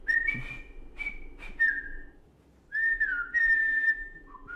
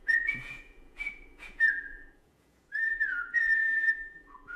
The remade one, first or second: second